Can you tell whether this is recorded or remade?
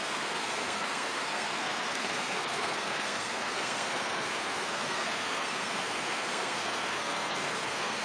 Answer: remade